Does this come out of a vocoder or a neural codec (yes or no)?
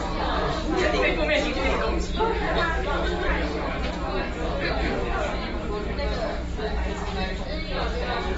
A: no